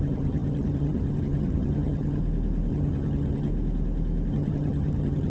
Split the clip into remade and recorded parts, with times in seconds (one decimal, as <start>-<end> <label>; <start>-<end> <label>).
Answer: 0.0-2.2 remade; 2.2-2.7 recorded; 2.7-3.5 remade; 3.5-4.3 recorded; 4.3-5.3 remade